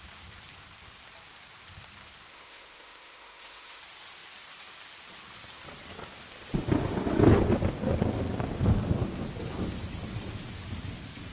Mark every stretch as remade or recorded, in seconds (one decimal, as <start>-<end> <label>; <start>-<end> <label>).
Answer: 0.0-2.3 recorded; 2.3-3.8 remade; 3.8-11.3 recorded